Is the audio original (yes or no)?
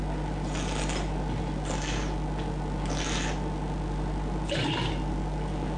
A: yes